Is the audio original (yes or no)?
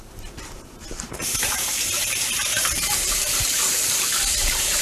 no